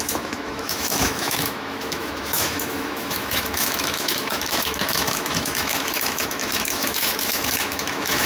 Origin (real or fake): fake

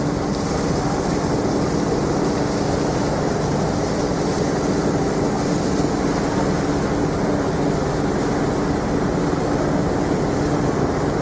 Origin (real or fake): real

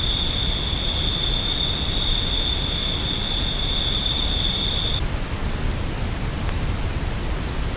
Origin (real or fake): real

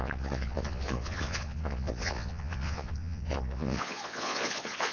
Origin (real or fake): fake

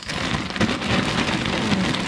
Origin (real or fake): real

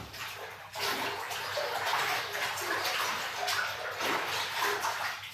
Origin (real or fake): real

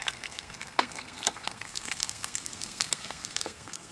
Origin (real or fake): fake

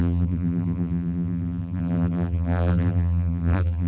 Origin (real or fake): fake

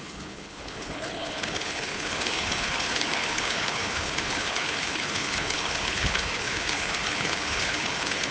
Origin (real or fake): fake